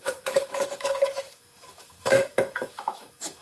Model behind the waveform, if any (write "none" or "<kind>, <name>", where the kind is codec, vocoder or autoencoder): autoencoder, DAC-VAE